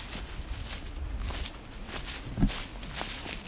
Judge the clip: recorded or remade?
recorded